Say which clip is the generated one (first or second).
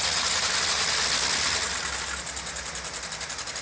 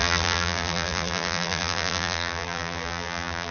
second